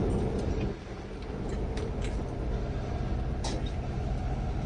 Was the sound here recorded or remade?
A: recorded